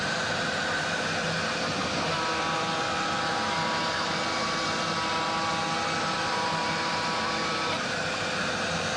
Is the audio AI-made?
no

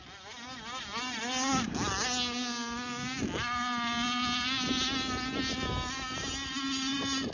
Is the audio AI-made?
no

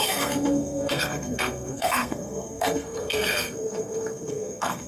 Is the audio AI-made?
yes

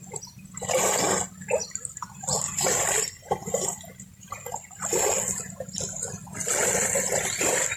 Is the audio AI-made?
no